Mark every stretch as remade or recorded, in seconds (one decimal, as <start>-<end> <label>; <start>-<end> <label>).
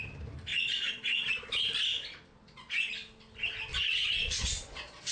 0.0-0.5 recorded; 0.5-1.3 remade; 1.3-2.3 recorded; 2.3-2.9 remade; 2.9-3.7 recorded; 3.7-5.1 remade